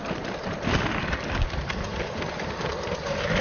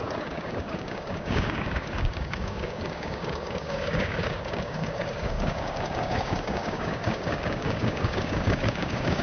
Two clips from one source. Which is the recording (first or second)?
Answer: first